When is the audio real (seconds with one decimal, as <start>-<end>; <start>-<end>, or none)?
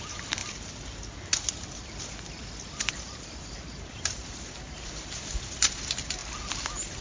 0.4-2.9; 6.2-7.0